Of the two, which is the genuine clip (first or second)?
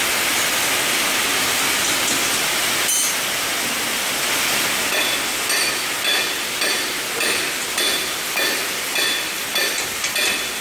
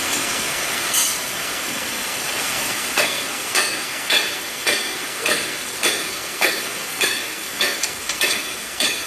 first